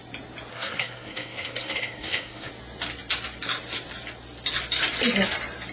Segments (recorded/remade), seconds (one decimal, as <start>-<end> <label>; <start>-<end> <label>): 0.0-0.5 recorded; 0.5-2.5 remade; 2.5-5.7 recorded